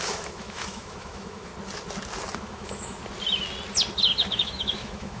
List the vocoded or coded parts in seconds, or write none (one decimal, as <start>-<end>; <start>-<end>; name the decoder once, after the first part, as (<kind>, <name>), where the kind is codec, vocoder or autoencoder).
0.0-1.5 (autoencoder, DAC-VAE); 2.4-3.0; 4.3-5.2